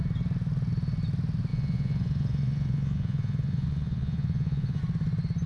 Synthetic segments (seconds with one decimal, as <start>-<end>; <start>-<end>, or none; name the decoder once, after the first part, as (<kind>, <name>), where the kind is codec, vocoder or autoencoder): 1.5-4.8 (vocoder, Vocos)